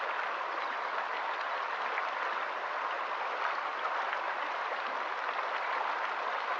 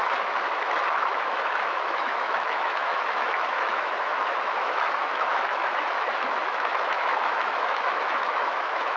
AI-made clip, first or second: second